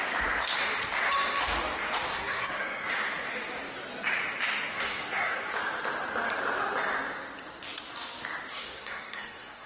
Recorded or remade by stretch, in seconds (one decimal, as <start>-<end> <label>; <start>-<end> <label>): 0.0-2.1 recorded; 2.1-2.9 remade; 2.9-4.7 recorded; 4.7-5.5 remade; 5.5-8.5 recorded; 8.5-9.7 remade